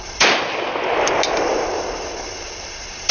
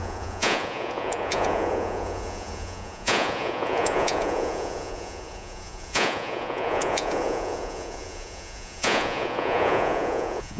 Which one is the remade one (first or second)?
second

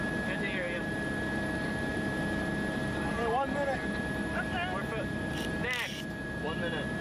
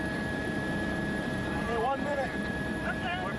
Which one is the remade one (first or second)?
second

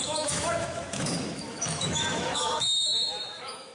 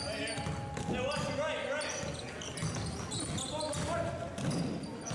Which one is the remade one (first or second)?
first